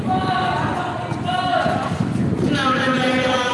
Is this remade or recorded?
recorded